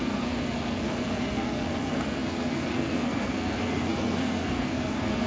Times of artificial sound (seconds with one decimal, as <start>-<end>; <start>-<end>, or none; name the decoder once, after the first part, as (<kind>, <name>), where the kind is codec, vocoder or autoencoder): 0.0-5.3 (codec, SNAC)